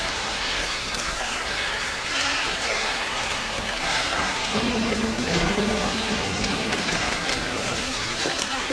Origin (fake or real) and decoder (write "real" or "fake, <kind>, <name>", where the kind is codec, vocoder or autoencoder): fake, codec, SNAC